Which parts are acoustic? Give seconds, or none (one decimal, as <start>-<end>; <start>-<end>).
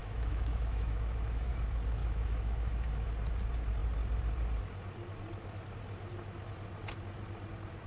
1.5-2.0; 3.1-7.9